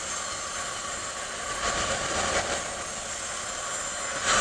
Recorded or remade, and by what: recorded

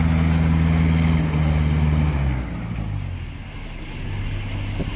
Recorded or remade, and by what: recorded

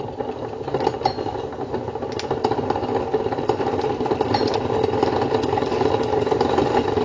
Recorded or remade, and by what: recorded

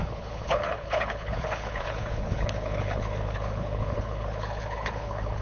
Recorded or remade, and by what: remade, codec, HILCodec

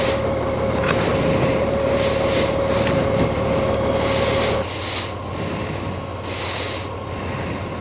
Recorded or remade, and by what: recorded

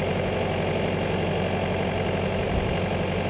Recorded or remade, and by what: recorded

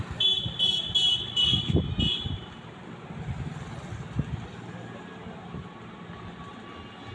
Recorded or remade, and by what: recorded